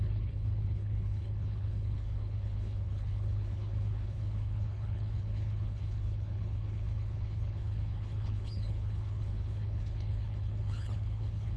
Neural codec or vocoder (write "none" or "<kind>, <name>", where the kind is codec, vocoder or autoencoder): codec, HILCodec